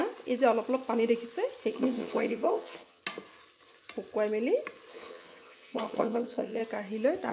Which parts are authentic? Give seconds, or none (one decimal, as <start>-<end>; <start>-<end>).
0.0-1.7; 3.0-4.9; 6.6-7.3